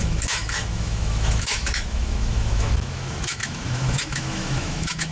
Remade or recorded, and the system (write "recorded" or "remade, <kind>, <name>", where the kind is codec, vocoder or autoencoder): remade, autoencoder, DAC-VAE